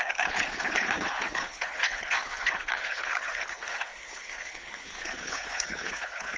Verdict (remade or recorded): remade